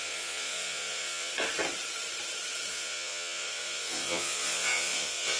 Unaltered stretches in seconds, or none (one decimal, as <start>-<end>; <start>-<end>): 1.3-2.7